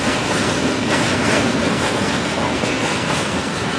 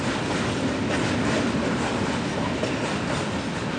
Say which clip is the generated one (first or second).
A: first